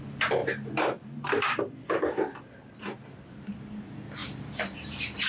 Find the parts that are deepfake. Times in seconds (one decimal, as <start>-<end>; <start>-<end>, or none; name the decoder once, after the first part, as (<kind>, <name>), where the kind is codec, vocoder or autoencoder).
0.4-3.6 (vocoder, BigVGAN v2); 4.2-5.3